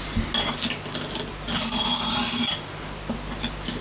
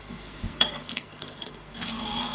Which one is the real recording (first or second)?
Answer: first